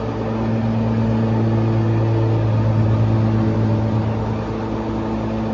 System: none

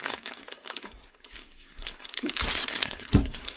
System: codec, SNAC